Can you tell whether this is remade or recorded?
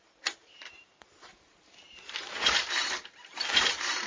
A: remade